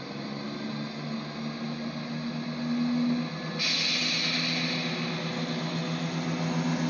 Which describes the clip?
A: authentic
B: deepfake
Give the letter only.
A